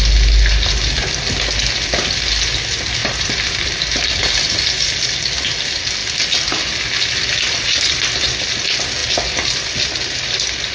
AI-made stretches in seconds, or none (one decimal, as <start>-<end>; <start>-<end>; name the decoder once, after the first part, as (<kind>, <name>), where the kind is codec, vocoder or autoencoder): 3.0-4.2 (vocoder, BigVGAN v2)